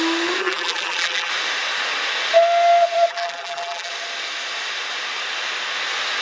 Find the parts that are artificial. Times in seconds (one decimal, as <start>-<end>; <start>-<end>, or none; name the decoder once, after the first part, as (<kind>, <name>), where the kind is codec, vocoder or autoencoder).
0.4-1.3 (vocoder, BigVGAN v2); 3.1-3.9